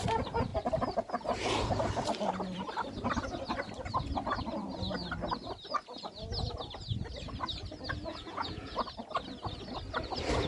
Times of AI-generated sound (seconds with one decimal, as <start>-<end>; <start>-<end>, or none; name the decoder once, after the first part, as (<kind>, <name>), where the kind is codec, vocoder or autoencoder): 8.1-8.8 (vocoder, Vocos)